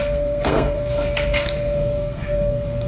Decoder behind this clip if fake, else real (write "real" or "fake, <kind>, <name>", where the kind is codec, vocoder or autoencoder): fake, codec, SNAC